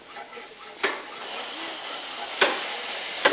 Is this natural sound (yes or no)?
yes